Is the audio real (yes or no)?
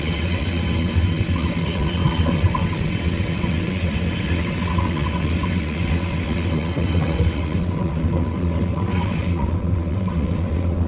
no